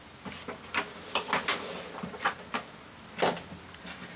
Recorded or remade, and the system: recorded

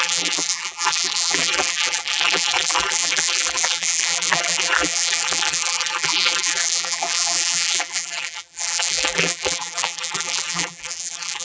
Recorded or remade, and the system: remade, vocoder, BigVGAN v2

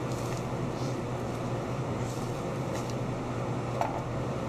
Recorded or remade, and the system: recorded